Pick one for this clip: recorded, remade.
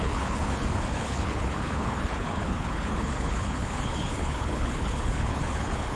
remade